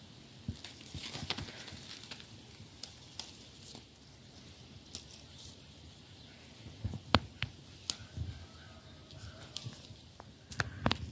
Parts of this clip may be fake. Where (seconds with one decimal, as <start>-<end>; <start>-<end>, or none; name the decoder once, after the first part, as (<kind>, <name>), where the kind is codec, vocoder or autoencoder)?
none